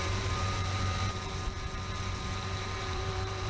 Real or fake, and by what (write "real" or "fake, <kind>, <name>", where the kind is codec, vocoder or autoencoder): fake, vocoder, BigVGAN v2